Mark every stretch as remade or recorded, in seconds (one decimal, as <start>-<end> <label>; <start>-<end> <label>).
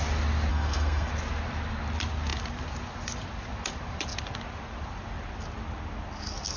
0.0-0.5 recorded; 0.5-1.1 remade; 1.1-6.6 recorded